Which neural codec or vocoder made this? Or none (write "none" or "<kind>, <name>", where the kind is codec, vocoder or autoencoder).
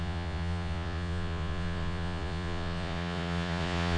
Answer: vocoder, Vocos